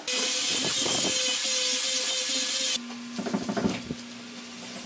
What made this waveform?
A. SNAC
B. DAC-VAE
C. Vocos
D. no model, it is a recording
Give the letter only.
D